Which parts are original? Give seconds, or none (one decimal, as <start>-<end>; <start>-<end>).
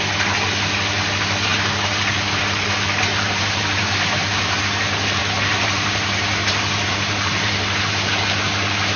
0.0-3.1; 4.6-5.2; 8.1-9.0